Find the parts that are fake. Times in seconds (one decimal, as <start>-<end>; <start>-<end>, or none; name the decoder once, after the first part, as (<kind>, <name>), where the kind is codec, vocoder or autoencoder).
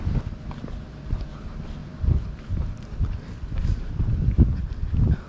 1.8-5.3 (vocoder, BigVGAN v2)